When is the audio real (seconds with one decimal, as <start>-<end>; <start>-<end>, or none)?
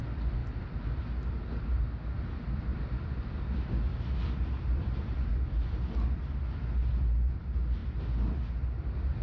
0.4-2.2; 7.8-8.5